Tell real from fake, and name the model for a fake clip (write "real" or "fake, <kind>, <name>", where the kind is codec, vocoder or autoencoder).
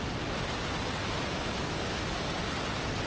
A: real